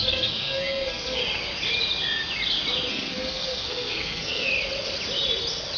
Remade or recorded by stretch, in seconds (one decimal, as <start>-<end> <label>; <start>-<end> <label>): 0.0-1.2 remade; 1.2-2.9 recorded; 2.9-4.5 remade; 4.5-5.8 recorded